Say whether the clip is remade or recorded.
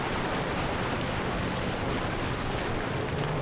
recorded